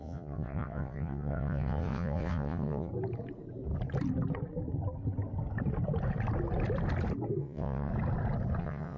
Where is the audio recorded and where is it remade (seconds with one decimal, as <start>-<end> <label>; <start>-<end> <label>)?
0.0-2.9 remade; 2.9-7.4 recorded; 7.4-7.9 remade; 7.9-8.6 recorded; 8.6-9.0 remade